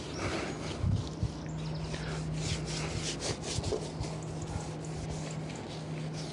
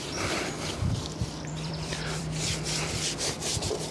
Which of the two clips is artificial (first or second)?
second